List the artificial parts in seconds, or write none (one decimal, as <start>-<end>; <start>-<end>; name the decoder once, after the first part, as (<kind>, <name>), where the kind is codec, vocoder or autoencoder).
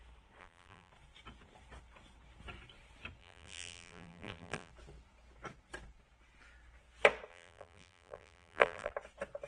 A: 0.4-0.9 (vocoder, BigVGAN v2); 3.2-4.7; 7.3-8.9